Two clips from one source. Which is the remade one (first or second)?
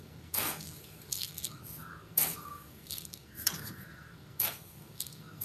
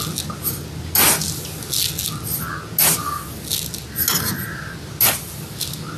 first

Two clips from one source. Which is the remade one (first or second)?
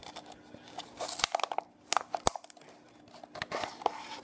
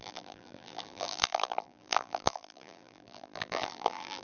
second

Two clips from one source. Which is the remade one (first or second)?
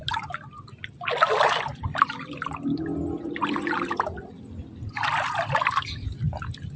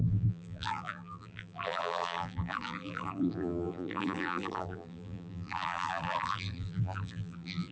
second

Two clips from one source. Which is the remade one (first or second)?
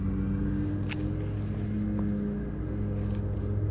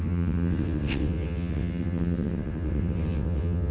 second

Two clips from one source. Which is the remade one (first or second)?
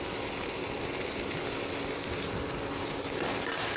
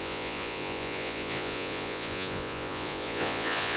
second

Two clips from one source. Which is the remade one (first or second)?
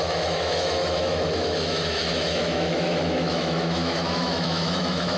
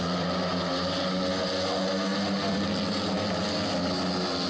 first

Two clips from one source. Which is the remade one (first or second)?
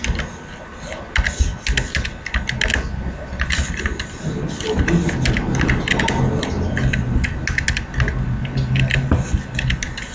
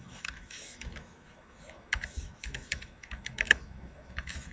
second